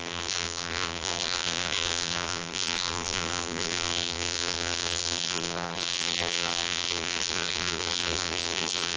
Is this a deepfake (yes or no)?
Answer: yes